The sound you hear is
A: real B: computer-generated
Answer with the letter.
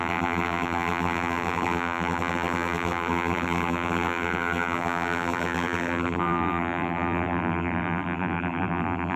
B